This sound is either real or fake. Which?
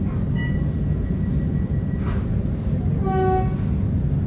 real